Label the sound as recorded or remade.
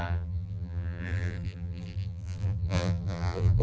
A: remade